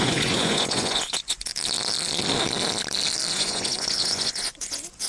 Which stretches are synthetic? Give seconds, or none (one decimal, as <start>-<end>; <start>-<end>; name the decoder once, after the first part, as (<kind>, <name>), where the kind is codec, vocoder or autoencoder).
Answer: 0.0-1.5 (vocoder, Vocos); 3.3-5.1